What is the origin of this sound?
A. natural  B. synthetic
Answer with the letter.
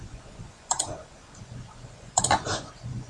B